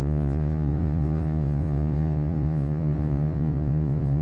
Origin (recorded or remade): remade